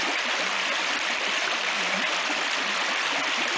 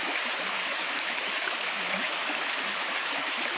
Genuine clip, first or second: first